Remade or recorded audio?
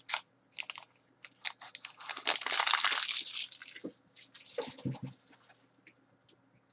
recorded